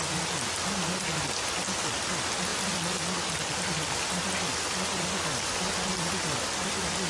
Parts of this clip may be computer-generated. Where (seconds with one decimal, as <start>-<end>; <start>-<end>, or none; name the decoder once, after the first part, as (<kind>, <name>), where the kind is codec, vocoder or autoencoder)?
none